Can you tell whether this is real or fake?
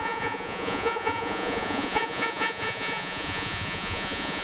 fake